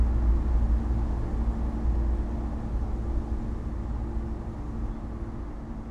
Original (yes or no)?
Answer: yes